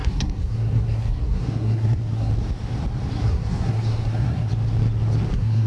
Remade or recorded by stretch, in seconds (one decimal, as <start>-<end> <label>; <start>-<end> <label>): 0.0-2.3 remade; 2.3-3.1 recorded; 3.1-4.5 remade; 4.5-5.3 recorded; 5.3-5.7 remade